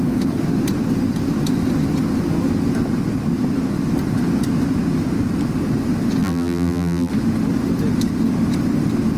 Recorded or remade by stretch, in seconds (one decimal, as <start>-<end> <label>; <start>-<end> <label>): 0.0-6.2 recorded; 6.2-7.1 remade; 7.1-9.2 recorded